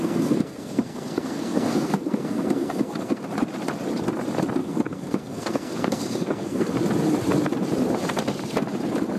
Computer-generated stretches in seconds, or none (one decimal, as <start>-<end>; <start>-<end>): 0.0-3.2; 4.6-6.7